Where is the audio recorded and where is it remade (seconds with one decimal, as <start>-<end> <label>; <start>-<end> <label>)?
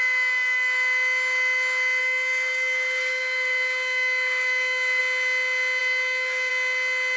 0.0-2.0 recorded; 2.0-5.0 remade; 5.0-5.8 recorded; 5.8-6.5 remade; 6.5-7.2 recorded